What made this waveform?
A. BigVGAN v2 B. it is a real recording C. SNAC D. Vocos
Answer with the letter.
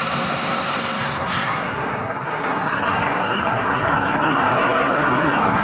C